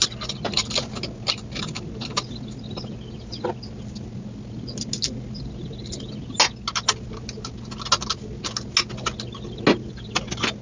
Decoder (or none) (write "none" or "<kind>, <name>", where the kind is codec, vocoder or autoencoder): none